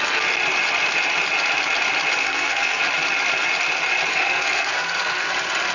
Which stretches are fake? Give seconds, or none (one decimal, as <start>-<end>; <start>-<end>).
2.2-2.8; 4.1-5.3